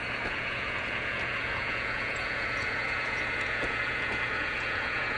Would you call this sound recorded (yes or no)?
no